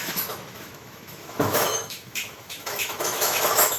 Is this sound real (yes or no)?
no